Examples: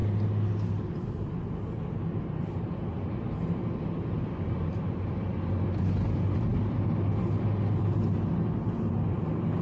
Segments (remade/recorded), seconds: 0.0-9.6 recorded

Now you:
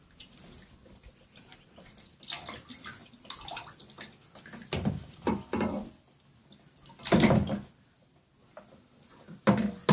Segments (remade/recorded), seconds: 0.0-9.9 recorded

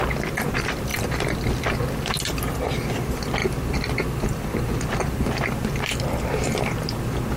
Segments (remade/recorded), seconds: 0.0-0.9 recorded; 0.9-3.0 remade; 3.0-3.4 recorded; 3.4-6.2 remade; 6.2-7.4 recorded

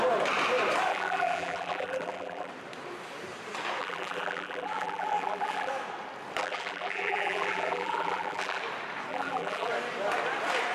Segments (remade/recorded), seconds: 0.0-0.9 recorded; 0.9-2.5 remade; 2.5-3.8 recorded; 3.8-5.7 remade; 5.7-6.4 recorded; 6.4-8.6 remade; 8.6-9.1 recorded; 9.1-9.7 remade; 9.7-10.7 recorded

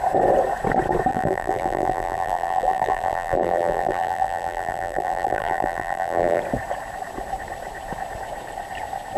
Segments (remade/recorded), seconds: 0.0-1.1 recorded; 1.1-6.4 remade; 6.4-9.2 recorded

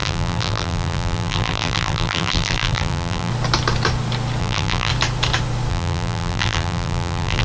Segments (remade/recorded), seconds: 0.0-3.3 remade; 3.3-4.4 recorded; 4.4-4.9 remade; 4.9-5.7 recorded; 5.7-7.4 remade

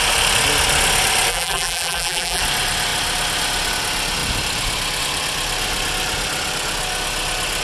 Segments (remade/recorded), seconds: 0.0-1.3 recorded; 1.3-2.4 remade; 2.4-7.6 recorded

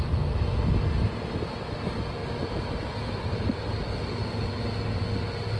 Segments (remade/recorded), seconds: 0.0-5.6 recorded